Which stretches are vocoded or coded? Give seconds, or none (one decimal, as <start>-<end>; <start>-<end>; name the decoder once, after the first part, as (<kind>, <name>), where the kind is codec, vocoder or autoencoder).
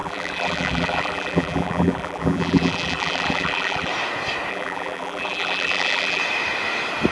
0.0-3.9 (vocoder, BigVGAN v2); 4.5-6.2